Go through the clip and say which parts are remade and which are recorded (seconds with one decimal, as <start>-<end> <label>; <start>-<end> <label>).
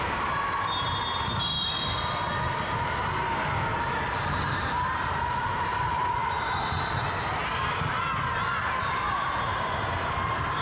0.0-3.7 recorded; 3.7-6.4 remade; 6.4-9.5 recorded; 9.5-10.6 remade